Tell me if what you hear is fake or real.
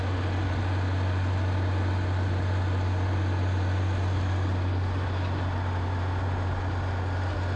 real